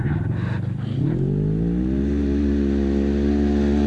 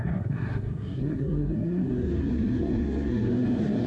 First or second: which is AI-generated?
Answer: second